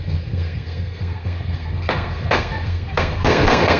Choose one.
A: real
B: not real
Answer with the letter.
B